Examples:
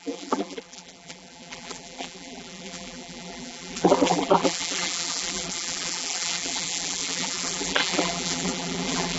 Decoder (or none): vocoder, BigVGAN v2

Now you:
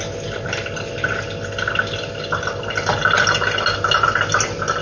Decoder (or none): none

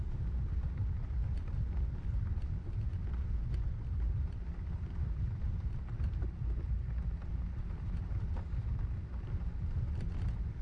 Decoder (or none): none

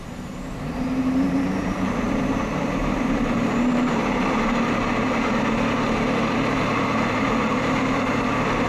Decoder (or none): vocoder, BigVGAN v2